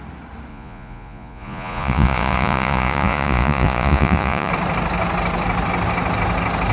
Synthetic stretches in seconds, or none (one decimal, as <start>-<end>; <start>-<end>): 0.5-4.5